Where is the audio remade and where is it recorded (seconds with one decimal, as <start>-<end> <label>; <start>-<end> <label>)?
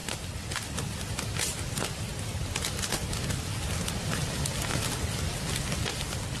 0.0-6.4 recorded